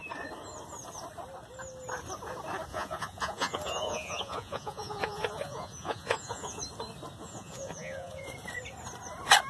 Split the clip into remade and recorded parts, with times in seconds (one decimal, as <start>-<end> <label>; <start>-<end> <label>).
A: 0.0-2.7 recorded; 2.7-6.6 remade; 6.6-7.2 recorded; 7.2-8.3 remade; 8.3-9.5 recorded